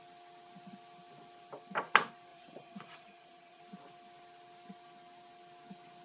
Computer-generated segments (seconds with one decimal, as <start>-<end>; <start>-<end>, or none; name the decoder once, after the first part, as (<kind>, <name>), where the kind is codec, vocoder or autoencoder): 2.3-3.6 (vocoder, Vocos)